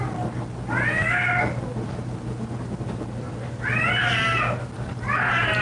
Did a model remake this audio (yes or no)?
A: no